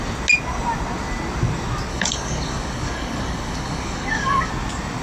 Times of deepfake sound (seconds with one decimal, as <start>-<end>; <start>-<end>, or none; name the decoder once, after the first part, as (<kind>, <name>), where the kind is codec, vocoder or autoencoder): 1.9-4.5 (codec, DAC)